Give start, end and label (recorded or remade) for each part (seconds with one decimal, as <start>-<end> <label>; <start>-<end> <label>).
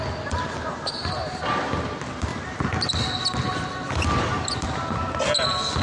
0.0-5.8 recorded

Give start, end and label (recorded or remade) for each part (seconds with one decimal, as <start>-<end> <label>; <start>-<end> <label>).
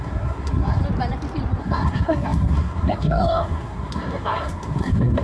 0.0-0.8 remade; 0.8-1.6 recorded; 1.6-5.2 remade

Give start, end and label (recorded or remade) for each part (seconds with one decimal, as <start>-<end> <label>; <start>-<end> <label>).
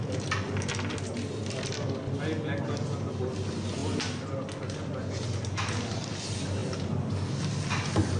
0.0-8.2 recorded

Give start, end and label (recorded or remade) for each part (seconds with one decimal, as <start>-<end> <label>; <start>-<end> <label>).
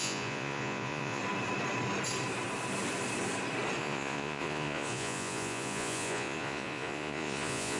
0.0-1.2 remade; 1.2-3.8 recorded; 3.8-7.8 remade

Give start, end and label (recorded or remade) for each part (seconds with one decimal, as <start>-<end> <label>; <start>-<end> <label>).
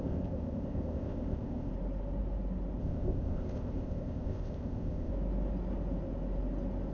0.0-1.7 remade; 1.7-2.8 recorded; 2.8-5.1 remade; 5.1-6.9 recorded